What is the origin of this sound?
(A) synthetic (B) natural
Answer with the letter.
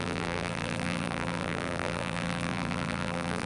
A